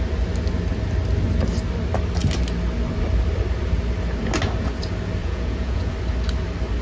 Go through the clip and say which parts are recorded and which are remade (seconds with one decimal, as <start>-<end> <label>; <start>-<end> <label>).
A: 0.0-5.2 recorded; 5.2-5.9 remade; 5.9-6.8 recorded